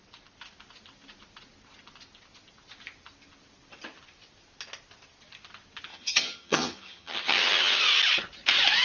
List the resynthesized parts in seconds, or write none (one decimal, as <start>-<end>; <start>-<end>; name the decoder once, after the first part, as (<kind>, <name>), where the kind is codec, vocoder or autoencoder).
5.9-7.8 (vocoder, HiFi-GAN)